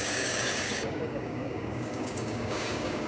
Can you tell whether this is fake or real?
fake